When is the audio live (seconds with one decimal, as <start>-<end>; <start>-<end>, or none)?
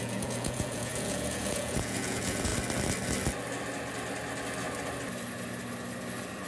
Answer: 2.5-6.5